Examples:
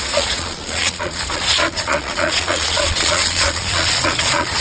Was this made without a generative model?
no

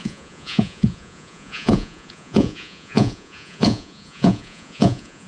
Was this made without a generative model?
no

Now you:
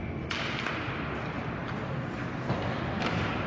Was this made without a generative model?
yes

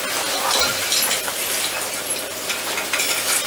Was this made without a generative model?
yes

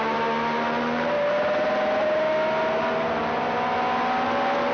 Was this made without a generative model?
yes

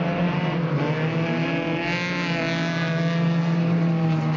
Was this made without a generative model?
yes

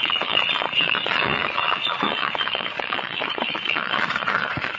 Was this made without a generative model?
no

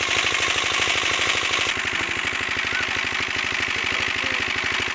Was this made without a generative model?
yes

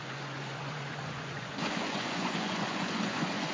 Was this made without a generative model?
no